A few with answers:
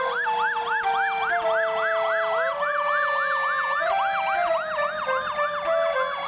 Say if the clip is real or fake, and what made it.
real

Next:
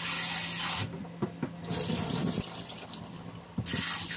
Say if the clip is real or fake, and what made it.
real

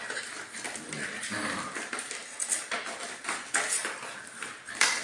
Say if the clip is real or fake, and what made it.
real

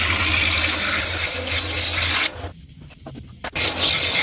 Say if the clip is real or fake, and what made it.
real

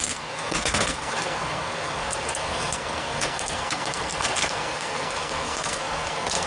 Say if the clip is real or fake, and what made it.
fake, codec, SNAC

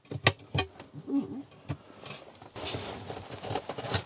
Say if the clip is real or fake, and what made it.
real